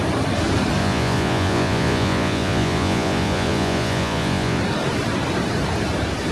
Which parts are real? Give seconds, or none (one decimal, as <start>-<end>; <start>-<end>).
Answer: 0.0-0.8; 4.6-6.3